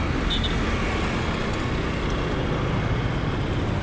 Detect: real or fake real